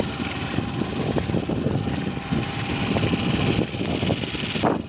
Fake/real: real